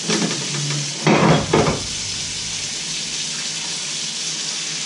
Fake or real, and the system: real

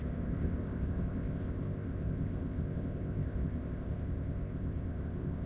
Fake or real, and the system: fake, codec, ZipCodec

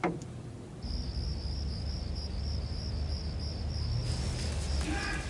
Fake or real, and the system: real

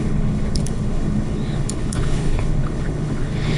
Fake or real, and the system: fake, codec, HILCodec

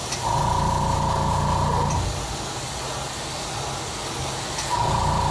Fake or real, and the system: real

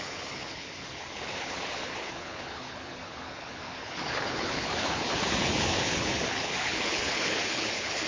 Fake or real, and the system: fake, codec, HILCodec